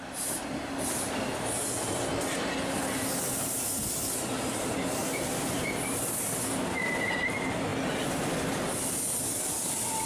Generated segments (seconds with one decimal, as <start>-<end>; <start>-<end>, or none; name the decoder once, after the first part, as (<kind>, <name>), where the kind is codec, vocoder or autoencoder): 5.0-5.6 (vocoder, BigVGAN v2)